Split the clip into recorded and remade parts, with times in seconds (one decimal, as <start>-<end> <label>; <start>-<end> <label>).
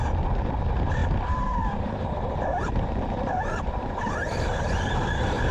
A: 0.0-5.5 remade